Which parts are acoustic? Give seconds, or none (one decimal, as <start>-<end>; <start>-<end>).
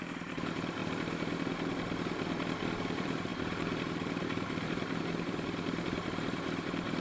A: 0.8-2.8